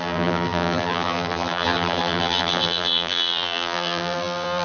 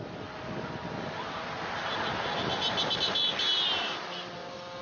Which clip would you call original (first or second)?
second